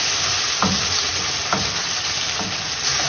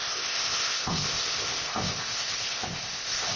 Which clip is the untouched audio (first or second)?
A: first